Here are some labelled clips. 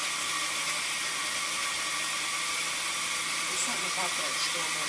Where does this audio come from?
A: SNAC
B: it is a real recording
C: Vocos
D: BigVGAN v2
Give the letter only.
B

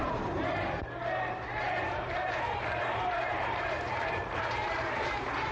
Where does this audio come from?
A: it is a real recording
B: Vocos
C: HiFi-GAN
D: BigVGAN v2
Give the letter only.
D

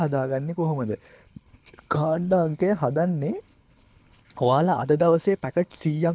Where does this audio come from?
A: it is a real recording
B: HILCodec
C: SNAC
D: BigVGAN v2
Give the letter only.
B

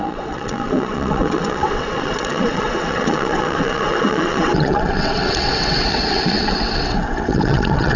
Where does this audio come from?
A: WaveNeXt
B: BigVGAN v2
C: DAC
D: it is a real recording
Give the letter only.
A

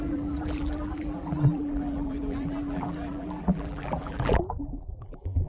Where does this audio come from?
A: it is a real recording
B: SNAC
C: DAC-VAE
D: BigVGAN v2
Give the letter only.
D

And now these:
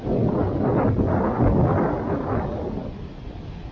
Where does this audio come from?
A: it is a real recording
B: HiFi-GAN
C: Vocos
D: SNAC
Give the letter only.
A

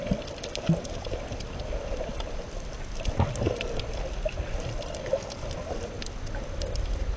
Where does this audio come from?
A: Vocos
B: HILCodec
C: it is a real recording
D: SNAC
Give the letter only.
C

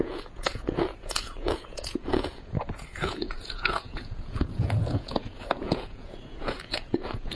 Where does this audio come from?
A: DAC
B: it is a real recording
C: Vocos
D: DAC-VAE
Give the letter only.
C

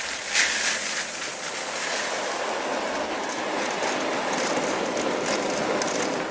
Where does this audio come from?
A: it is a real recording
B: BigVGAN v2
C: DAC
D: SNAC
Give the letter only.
A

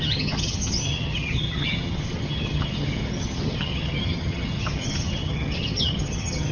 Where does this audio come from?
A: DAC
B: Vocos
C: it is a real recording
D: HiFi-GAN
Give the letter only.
D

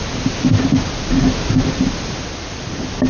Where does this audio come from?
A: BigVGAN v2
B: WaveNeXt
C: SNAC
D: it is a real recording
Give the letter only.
D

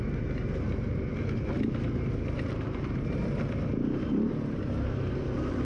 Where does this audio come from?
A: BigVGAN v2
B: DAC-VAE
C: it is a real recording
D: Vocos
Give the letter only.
C